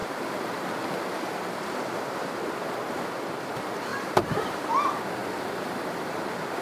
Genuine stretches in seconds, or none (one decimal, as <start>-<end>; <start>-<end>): 0.0-3.9; 4.6-5.2; 5.8-6.6